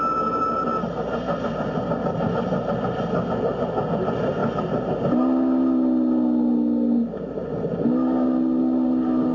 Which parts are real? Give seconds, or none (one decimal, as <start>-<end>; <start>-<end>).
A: 0.0-9.3